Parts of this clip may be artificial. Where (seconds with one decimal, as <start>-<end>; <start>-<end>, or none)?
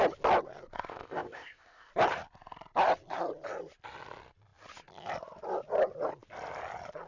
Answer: 0.9-1.9